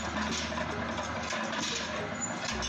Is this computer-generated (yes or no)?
no